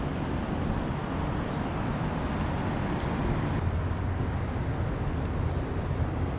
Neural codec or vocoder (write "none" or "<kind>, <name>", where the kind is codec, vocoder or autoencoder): none